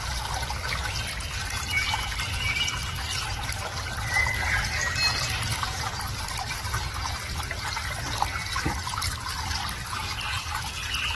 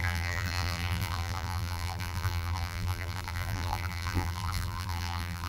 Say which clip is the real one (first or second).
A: first